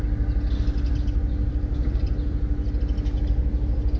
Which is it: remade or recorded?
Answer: recorded